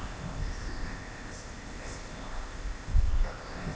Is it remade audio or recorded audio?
remade